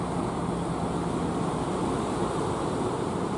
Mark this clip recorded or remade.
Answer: recorded